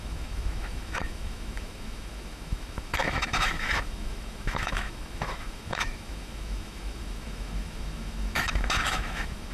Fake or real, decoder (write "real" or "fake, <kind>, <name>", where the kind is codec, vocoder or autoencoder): fake, autoencoder, DAC-VAE